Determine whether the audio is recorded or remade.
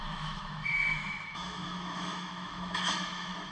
remade